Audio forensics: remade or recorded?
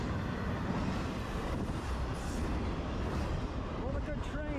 recorded